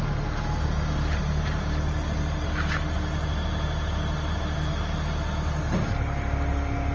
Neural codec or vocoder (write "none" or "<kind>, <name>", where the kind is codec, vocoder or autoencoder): none